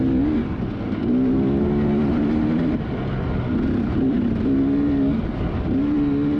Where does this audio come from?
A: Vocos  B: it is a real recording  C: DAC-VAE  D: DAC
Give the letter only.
B